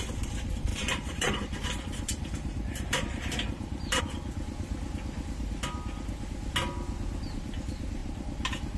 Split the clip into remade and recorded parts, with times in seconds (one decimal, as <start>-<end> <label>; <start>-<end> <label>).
0.0-0.7 recorded; 0.7-4.0 remade; 4.0-8.8 recorded